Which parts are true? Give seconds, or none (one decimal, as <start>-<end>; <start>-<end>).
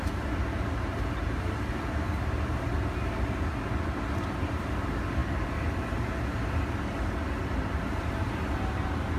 0.0-9.2